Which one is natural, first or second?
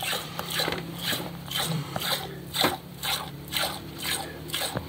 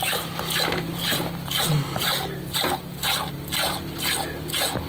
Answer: second